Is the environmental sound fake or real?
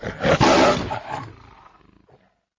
real